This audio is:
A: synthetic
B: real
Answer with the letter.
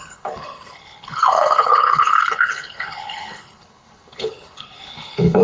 A